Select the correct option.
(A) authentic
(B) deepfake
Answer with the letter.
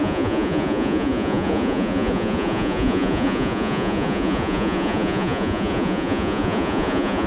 B